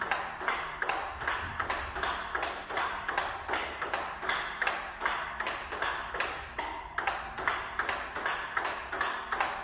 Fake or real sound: real